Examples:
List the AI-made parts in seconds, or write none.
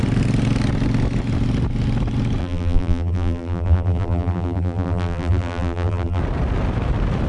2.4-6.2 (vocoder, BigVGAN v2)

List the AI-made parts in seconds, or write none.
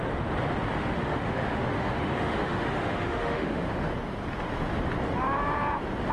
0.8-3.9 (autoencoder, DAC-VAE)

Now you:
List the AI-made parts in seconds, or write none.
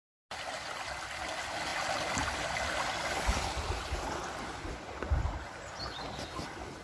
none